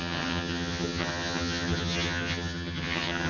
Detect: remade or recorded remade